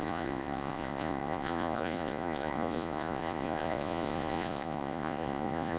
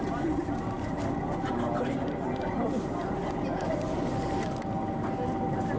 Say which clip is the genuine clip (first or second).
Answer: second